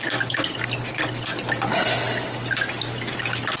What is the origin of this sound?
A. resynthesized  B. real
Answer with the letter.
B